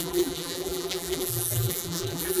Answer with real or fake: fake